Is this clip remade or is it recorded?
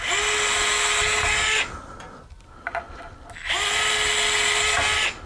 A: recorded